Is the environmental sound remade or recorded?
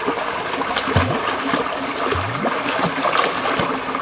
recorded